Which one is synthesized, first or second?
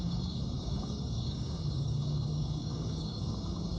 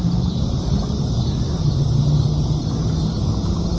first